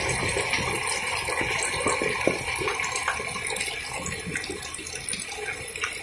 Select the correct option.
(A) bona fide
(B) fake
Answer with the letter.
A